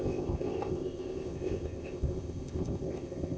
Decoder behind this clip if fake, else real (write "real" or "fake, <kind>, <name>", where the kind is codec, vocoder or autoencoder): fake, codec, ZipCodec